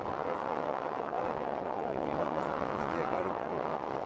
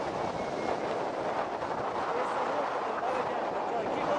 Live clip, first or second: second